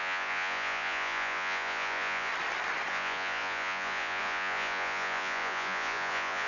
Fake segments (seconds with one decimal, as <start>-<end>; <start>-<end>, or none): 0.0-2.3; 2.9-6.5